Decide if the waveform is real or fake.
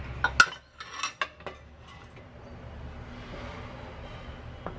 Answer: real